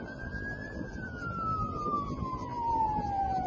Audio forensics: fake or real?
fake